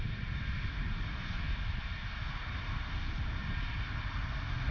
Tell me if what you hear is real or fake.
real